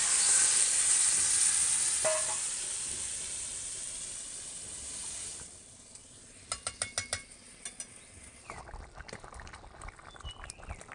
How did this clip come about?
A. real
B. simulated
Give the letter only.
A